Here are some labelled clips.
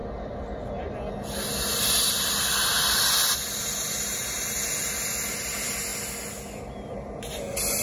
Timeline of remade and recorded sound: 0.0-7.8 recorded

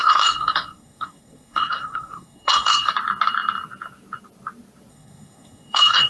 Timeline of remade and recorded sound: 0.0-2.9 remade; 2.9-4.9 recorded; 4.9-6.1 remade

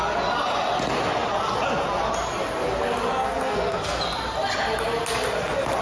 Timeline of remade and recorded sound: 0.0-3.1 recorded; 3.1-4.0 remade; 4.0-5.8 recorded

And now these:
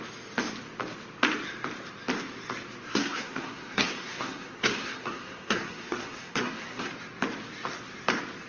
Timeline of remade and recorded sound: 0.0-2.9 recorded; 2.9-6.9 remade; 6.9-8.5 recorded